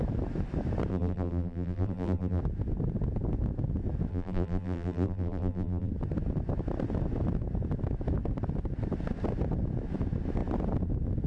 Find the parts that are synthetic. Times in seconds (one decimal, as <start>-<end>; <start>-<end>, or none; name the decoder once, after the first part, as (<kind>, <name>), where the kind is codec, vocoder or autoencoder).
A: 0.9-2.4 (vocoder, BigVGAN v2); 4.1-5.9

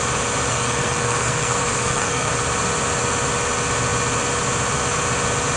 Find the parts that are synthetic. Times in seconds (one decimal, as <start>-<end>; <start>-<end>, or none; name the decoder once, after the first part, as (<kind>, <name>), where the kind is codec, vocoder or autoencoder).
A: 0.5-2.3 (codec, SNAC)

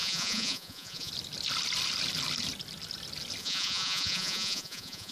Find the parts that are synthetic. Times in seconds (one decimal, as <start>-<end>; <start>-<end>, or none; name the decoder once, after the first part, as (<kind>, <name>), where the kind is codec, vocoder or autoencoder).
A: 0.0-1.1 (vocoder, Vocos); 3.4-5.1

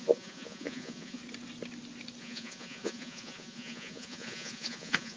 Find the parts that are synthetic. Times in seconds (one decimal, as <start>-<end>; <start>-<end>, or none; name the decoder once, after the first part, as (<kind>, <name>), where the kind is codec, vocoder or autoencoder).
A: 0.0-1.2 (vocoder, Vocos); 2.2-5.2

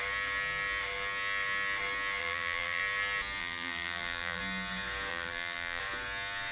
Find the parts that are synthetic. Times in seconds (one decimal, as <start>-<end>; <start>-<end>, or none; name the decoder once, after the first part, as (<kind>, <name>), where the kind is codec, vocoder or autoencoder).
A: 2.2-2.8 (vocoder, BigVGAN v2); 3.4-4.4; 5.1-5.8

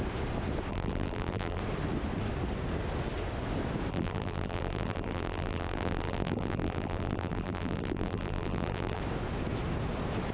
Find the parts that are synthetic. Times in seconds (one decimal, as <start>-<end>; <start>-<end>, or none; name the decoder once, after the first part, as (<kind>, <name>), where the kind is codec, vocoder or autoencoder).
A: 0.7-1.6 (vocoder, BigVGAN v2); 3.9-9.0